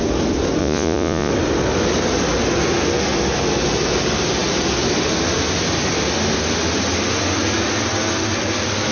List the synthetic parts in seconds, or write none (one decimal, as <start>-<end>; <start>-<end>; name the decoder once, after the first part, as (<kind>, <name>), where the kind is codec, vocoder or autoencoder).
0.6-1.3 (vocoder, Vocos)